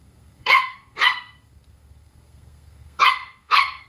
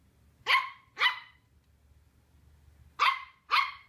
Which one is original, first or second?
second